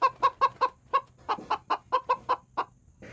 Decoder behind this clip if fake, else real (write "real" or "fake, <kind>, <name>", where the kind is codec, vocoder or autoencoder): real